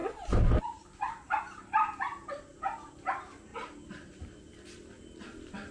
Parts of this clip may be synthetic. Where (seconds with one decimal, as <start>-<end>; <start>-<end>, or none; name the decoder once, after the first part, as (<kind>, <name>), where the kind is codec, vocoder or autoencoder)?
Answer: none